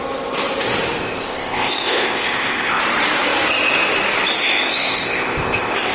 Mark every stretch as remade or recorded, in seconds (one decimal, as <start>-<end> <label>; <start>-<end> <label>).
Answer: 0.0-1.0 recorded; 1.0-2.8 remade; 2.8-4.4 recorded; 4.4-5.9 remade